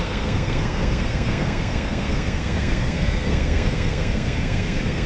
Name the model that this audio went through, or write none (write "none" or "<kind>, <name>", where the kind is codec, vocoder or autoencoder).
codec, SNAC